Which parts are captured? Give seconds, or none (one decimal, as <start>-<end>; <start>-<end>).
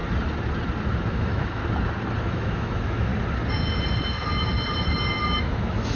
0.0-1.1; 1.6-2.2; 3.1-5.4